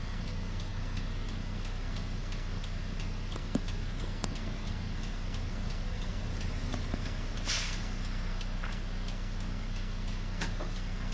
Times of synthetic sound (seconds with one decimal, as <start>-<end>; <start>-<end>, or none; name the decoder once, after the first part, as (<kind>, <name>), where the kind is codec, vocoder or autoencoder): 0.0-6.3 (codec, SNAC); 6.8-11.1